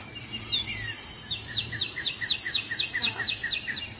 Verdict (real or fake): fake